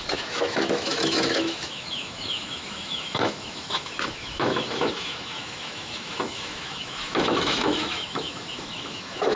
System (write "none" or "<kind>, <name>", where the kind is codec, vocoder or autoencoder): autoencoder, DAC-VAE